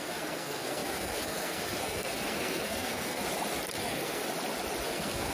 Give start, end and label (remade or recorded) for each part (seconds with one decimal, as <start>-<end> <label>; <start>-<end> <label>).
0.0-3.2 remade; 3.2-3.8 recorded; 3.8-4.2 remade; 4.2-4.8 recorded; 4.8-5.3 remade